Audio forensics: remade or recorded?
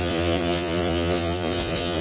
remade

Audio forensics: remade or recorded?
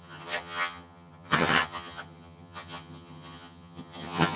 remade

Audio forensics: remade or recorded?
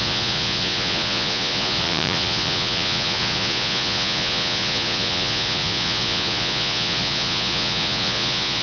remade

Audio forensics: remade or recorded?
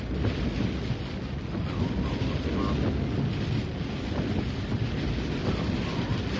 recorded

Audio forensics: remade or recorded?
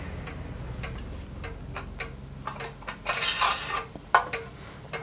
recorded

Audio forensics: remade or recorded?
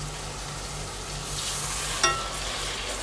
recorded